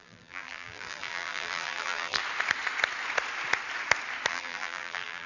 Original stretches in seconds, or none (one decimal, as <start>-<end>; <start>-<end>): 2.2-4.3